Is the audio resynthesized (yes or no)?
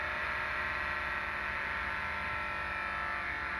no